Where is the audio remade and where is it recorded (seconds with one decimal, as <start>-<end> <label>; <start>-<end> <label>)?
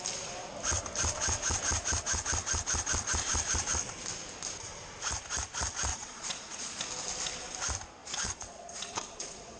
0.0-5.9 recorded; 5.9-6.8 remade; 6.8-8.0 recorded; 8.0-9.6 remade